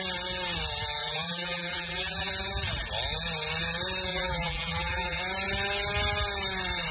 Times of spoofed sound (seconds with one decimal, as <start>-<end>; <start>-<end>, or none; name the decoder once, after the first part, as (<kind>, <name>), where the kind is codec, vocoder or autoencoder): 1.0-2.3 (vocoder, BigVGAN v2); 4.1-5.2